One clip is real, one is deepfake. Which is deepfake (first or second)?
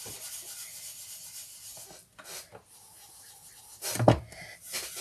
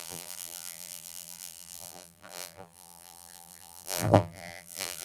second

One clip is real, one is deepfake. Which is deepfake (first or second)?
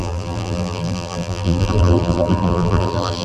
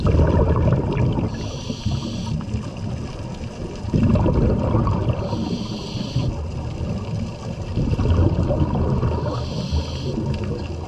first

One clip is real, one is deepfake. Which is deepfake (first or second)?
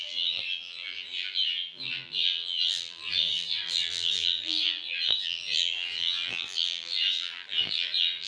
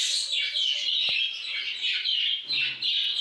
first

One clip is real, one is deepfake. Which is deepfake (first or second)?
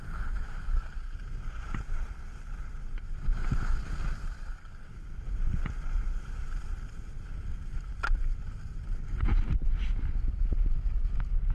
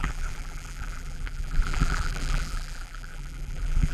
second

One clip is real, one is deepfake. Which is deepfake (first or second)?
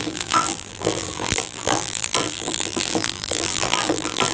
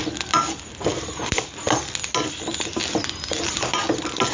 first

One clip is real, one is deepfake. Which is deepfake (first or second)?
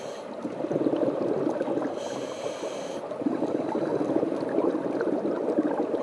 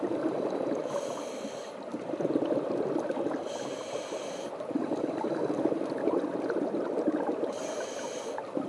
second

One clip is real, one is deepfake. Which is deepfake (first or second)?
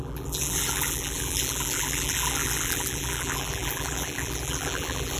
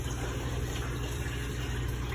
first